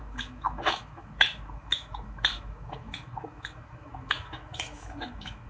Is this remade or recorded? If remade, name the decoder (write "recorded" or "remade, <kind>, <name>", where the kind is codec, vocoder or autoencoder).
remade, autoencoder, DAC-VAE